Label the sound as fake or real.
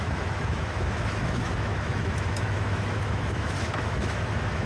fake